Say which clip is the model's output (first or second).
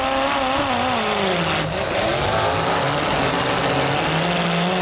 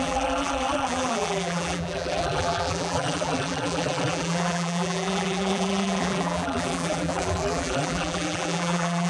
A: second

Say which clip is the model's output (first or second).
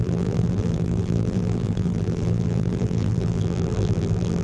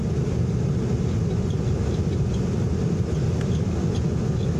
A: first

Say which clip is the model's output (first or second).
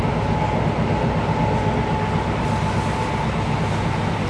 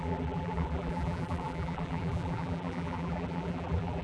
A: second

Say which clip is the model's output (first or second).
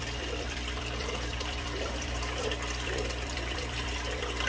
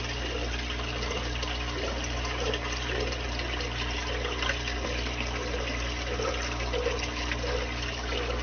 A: first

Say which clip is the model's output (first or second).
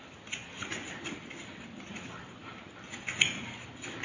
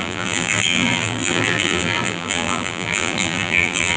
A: second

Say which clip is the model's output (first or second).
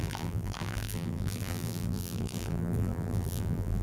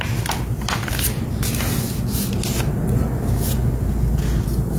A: first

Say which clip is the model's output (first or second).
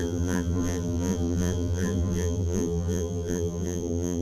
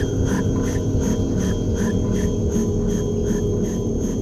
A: first